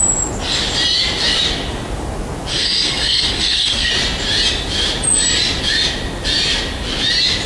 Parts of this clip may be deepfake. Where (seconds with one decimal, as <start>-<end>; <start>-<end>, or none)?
2.5-3.9